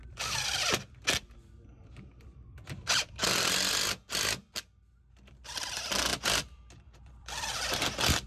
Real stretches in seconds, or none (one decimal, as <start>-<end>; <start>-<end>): 3.3-6.1; 7.7-8.3